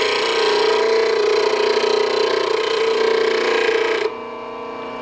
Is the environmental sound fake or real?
real